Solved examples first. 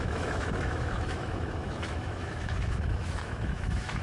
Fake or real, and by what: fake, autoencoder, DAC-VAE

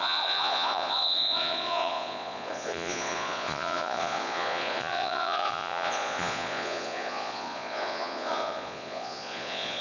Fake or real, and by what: fake, vocoder, Vocos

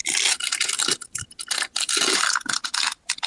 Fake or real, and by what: real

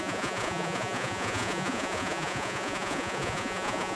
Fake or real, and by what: fake, vocoder, Vocos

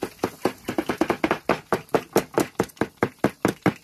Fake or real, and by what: real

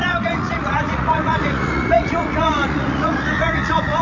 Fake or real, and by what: fake, vocoder, Vocos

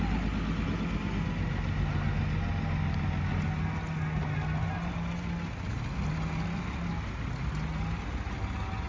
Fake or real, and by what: real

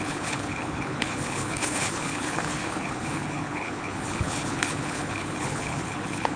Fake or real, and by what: fake, codec, HILCodec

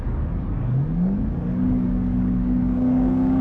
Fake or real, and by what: fake, codec, DAC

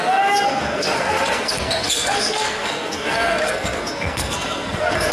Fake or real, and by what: fake, codec, SNAC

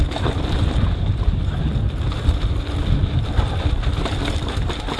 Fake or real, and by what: real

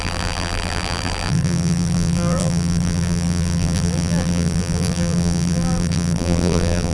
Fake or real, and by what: fake, vocoder, BigVGAN v2